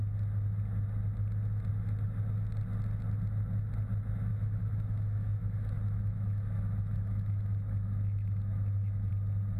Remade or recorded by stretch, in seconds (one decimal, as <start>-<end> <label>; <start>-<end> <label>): 0.0-4.3 recorded; 4.3-9.1 remade; 9.1-9.6 recorded